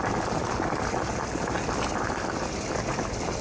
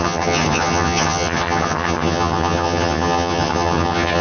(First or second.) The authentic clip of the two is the first